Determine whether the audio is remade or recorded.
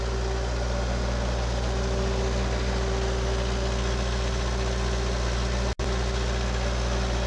recorded